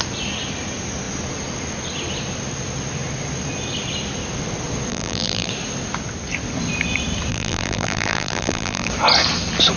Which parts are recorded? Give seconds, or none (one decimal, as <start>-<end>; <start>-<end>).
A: 0.0-4.9; 5.5-7.3; 8.9-9.8

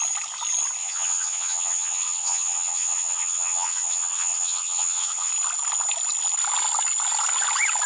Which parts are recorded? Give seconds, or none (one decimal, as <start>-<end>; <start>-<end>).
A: 0.0-0.8; 5.3-7.9